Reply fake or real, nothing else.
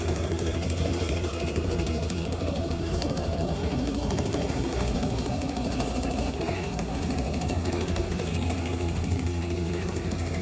fake